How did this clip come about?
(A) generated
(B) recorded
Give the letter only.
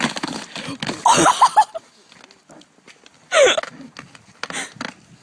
B